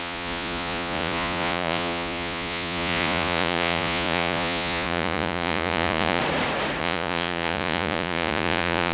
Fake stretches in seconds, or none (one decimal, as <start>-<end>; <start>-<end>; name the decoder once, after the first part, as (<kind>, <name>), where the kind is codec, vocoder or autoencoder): 0.0-6.2 (vocoder, Vocos); 6.8-8.9